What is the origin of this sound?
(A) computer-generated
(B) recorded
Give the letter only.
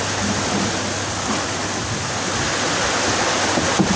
B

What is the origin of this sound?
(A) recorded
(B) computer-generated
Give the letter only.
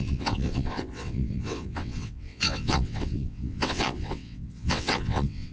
B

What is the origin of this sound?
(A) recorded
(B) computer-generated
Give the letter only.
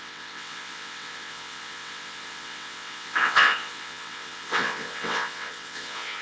B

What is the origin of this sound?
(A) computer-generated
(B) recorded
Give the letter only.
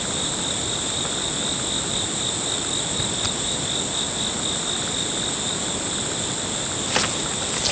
B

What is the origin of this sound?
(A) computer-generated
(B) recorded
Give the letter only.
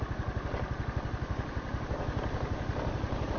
B